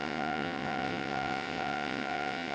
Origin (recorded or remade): remade